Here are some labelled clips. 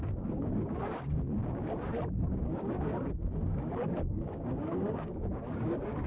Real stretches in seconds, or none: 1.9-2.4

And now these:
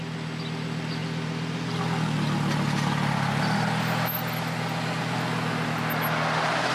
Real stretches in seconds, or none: 0.0-6.7

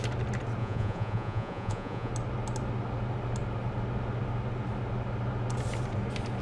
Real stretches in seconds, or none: 0.0-0.6; 2.1-6.4

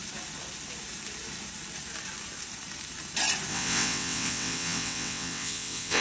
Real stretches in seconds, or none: 0.0-3.5